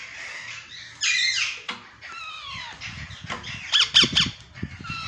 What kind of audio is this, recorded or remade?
recorded